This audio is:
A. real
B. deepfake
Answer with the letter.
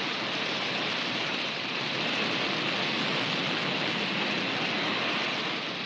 A